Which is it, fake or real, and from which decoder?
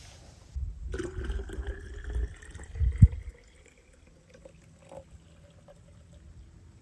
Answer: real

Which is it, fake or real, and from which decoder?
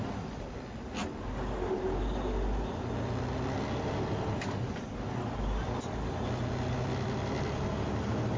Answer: real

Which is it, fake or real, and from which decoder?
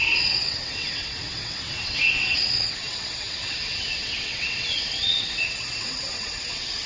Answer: fake, vocoder, WaveNeXt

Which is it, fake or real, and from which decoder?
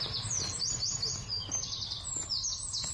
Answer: real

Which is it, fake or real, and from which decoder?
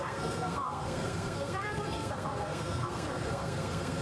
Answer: fake, codec, SNAC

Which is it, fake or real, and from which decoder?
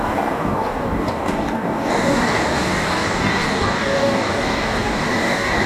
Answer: fake, codec, DAC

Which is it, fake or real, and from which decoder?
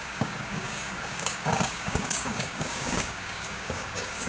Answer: fake, codec, DAC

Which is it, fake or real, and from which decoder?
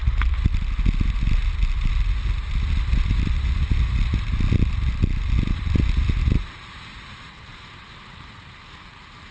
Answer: real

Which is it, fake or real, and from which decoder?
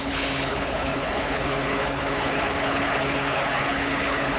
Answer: fake, codec, HILCodec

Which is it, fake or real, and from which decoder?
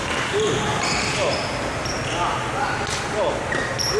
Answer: real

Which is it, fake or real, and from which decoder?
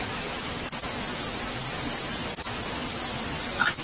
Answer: real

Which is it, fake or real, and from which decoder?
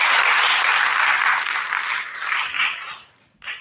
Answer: fake, vocoder, BigVGAN v2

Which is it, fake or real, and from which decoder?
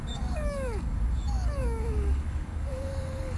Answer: fake, codec, DAC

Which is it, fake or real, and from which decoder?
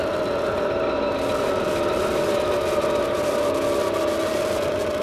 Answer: real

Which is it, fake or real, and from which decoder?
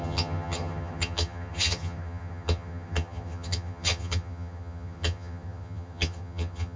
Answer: fake, vocoder, HiFi-GAN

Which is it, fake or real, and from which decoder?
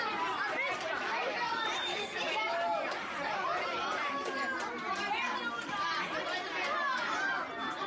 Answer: real